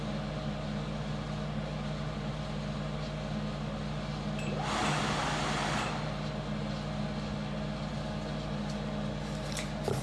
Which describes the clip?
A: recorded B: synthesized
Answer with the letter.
A